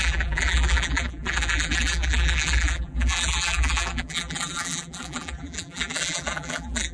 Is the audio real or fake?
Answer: fake